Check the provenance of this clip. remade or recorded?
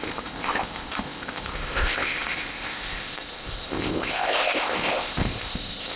remade